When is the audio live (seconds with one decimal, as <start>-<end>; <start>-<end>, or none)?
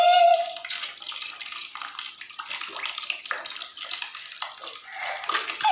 0.0-5.7